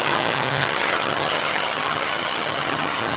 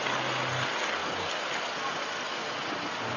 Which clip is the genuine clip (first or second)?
second